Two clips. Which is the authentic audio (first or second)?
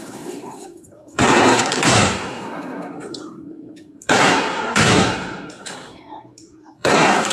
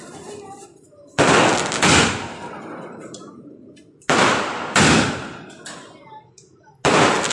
second